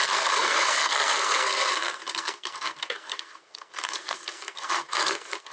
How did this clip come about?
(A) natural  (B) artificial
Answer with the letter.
B